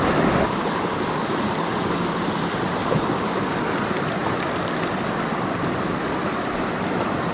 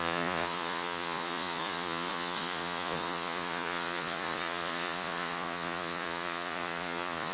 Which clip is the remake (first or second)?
second